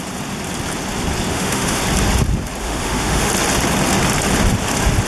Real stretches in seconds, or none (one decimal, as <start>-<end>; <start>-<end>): 0.0-1.3; 1.8-2.6; 3.3-5.1